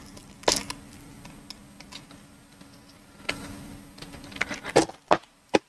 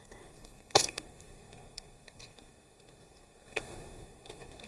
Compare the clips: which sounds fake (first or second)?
second